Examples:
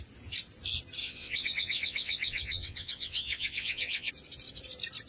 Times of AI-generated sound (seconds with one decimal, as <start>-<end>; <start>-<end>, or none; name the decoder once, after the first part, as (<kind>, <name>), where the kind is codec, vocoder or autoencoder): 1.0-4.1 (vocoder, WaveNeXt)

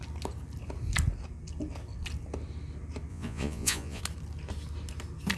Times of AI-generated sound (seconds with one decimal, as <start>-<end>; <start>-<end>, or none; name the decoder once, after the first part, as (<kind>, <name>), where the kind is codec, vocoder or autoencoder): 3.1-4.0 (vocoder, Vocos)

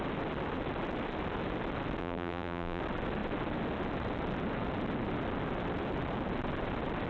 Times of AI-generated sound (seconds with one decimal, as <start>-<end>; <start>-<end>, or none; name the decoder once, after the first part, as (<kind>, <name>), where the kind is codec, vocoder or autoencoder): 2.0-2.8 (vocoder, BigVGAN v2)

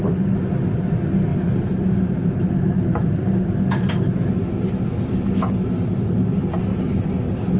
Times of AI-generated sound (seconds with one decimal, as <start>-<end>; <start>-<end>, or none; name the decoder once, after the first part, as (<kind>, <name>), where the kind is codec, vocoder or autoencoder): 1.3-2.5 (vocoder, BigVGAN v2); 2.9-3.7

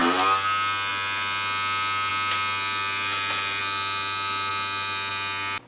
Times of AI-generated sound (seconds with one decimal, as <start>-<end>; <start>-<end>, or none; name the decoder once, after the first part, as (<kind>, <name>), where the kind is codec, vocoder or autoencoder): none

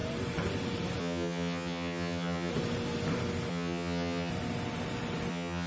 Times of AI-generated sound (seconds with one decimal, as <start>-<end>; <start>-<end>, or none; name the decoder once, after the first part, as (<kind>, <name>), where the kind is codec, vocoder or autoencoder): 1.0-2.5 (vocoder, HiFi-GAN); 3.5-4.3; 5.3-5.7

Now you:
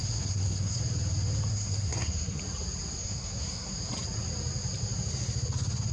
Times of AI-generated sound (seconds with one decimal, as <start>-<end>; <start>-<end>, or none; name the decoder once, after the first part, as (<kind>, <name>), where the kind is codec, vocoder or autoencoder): 0.0-0.8 (codec, SNAC); 1.5-2.4; 3.0-3.7

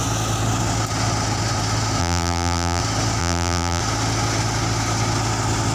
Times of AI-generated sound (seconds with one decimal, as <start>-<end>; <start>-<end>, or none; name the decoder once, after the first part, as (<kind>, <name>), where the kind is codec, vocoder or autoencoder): 2.0-2.8 (vocoder, BigVGAN v2); 3.2-3.8